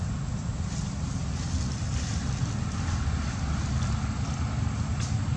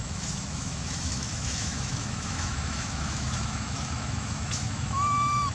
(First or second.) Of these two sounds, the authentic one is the first